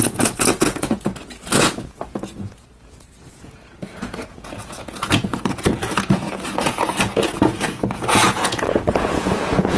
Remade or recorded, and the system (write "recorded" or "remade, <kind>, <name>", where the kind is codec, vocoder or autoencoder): remade, vocoder, Vocos